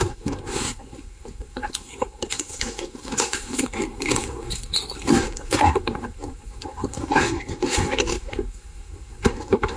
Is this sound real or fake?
fake